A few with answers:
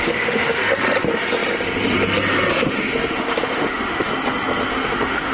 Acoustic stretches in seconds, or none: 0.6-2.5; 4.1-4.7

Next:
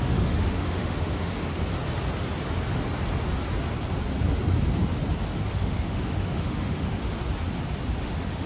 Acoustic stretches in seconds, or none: 1.7-5.5; 7.2-8.0

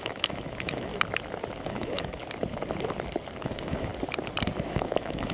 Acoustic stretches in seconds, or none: 0.9-1.6; 2.2-3.4; 3.9-4.7

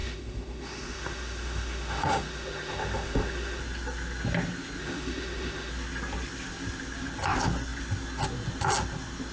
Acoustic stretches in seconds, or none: 3.6-4.8; 5.7-9.3